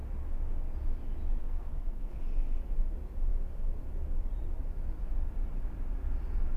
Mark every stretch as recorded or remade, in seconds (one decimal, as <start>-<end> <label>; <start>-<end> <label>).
0.0-1.4 recorded; 1.4-2.2 remade; 2.2-6.6 recorded